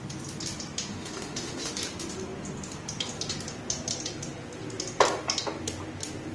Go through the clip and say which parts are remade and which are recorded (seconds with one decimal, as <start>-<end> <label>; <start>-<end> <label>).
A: 0.0-0.9 recorded; 0.9-1.7 remade; 1.7-6.3 recorded